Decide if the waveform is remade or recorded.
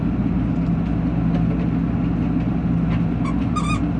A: recorded